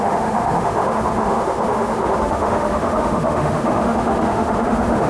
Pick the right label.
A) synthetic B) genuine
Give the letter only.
A